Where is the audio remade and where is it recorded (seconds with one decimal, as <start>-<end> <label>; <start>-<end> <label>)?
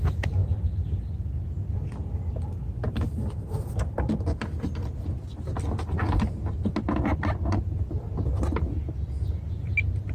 0.0-10.1 recorded